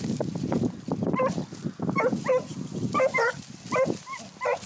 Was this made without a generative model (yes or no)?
no